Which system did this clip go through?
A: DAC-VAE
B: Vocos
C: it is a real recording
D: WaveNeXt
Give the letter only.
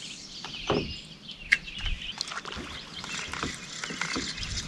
C